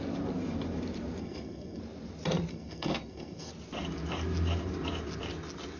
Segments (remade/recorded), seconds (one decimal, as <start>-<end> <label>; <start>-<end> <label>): 0.0-1.2 recorded; 1.2-1.8 remade; 1.8-2.5 recorded; 2.5-3.5 remade; 3.5-5.8 recorded